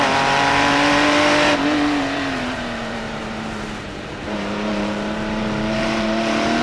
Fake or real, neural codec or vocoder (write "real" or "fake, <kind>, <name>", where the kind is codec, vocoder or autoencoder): fake, vocoder, BigVGAN v2